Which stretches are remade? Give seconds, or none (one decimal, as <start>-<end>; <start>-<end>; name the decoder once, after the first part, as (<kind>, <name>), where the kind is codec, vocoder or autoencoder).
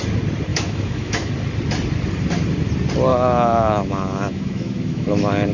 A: 0.5-1.3 (autoencoder, DAC-VAE); 3.1-5.5